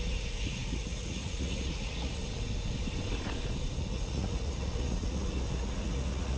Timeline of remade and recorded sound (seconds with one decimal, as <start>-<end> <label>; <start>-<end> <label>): 0.0-2.2 remade; 2.2-3.8 recorded; 3.8-6.4 remade